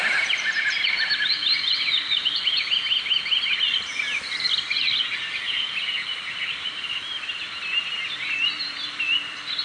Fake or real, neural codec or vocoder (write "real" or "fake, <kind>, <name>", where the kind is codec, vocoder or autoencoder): fake, vocoder, BigVGAN v2